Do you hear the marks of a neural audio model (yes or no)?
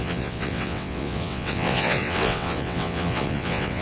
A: yes